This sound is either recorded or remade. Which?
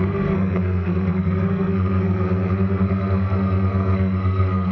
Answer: remade